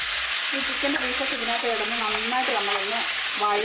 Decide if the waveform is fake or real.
real